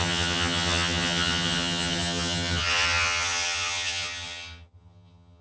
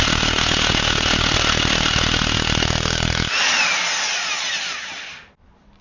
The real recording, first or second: second